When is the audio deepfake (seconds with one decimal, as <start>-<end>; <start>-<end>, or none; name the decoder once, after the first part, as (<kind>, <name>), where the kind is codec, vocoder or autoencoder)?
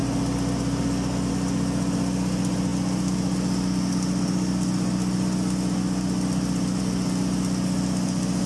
none